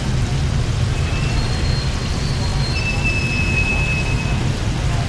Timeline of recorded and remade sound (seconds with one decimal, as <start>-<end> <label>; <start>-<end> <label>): 0.0-5.1 recorded